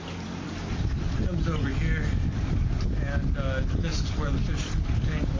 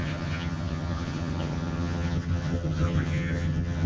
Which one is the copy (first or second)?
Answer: second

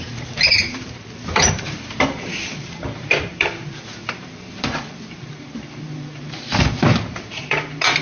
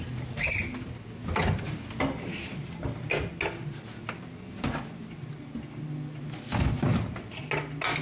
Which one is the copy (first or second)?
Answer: first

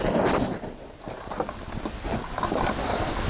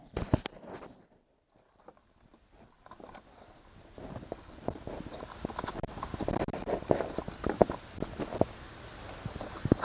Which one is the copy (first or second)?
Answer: second